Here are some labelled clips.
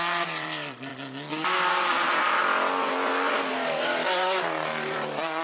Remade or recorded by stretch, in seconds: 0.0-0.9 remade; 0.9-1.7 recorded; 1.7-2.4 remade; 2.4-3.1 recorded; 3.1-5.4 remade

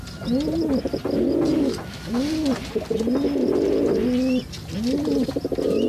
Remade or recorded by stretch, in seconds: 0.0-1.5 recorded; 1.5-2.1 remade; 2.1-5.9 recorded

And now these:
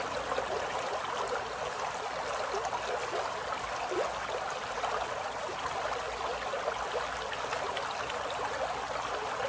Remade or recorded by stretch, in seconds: 0.0-9.5 recorded

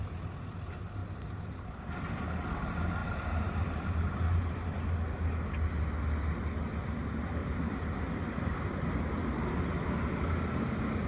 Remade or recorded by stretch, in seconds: 0.0-1.0 recorded; 1.0-1.8 remade; 1.8-3.0 recorded; 3.0-4.5 remade; 4.5-7.4 recorded; 7.4-8.0 remade; 8.0-11.1 recorded

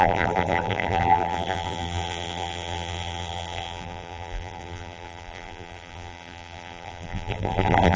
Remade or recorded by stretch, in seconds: 0.0-8.0 remade

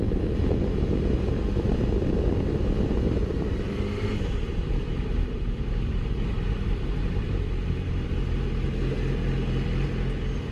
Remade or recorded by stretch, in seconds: 0.0-4.1 recorded; 4.1-8.1 remade; 8.1-10.5 recorded